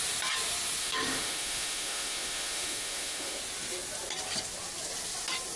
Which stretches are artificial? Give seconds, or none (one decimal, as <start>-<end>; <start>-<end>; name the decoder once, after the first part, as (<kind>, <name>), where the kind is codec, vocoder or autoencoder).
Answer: 0.8-3.4 (autoencoder, DAC-VAE)